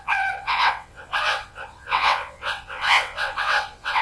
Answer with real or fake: fake